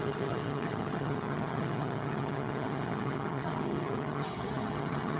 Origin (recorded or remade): remade